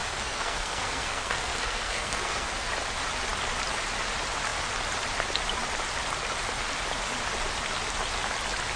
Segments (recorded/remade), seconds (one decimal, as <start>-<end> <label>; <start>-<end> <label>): 0.0-2.7 remade; 2.7-8.8 recorded